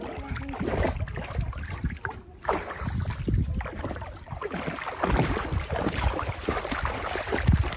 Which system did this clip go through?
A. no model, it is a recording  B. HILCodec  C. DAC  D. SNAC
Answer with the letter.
A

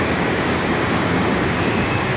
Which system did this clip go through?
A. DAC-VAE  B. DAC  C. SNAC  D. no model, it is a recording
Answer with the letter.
B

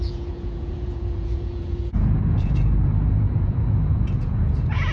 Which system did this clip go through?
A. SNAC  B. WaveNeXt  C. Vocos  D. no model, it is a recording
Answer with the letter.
C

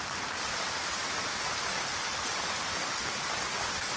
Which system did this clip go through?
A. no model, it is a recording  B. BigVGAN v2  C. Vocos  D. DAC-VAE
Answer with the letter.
A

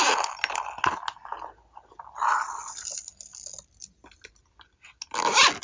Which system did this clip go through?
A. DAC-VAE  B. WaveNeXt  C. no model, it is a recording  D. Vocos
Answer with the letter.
C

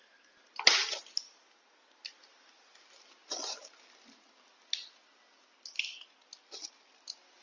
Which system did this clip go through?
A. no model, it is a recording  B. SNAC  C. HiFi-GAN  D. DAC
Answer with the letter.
A